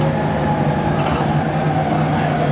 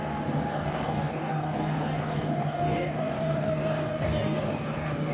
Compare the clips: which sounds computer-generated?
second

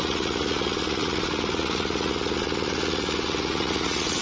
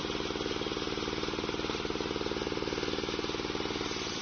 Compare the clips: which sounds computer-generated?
first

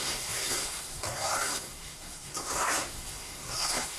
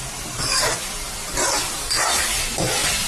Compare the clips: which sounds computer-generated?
first